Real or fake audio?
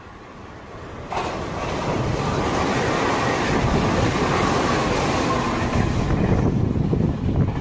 real